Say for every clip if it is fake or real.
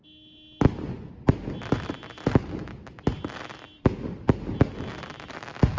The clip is real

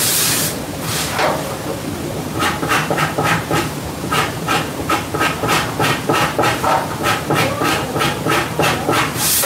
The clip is fake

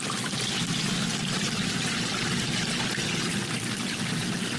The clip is real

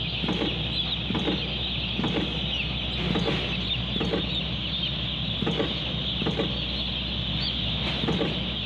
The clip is real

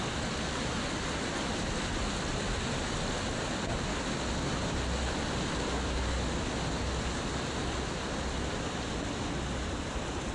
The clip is real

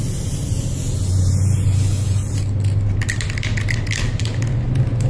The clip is real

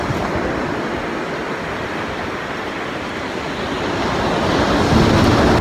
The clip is real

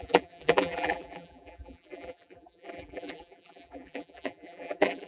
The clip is fake